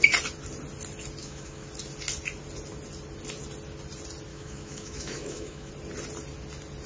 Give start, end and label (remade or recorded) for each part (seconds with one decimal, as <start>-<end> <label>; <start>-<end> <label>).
0.0-1.2 recorded; 1.2-1.7 remade; 1.7-4.3 recorded; 4.3-5.7 remade; 5.7-6.9 recorded